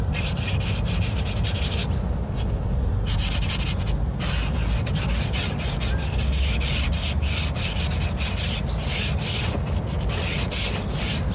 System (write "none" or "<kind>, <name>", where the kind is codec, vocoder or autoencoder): none